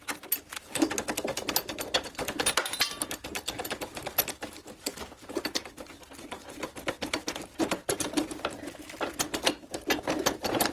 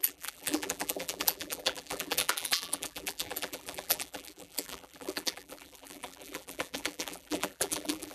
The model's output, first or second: second